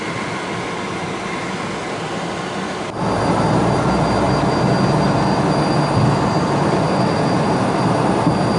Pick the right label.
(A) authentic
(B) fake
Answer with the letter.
A